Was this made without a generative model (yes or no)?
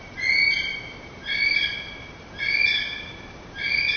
yes